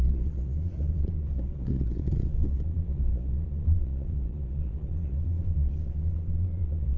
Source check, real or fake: fake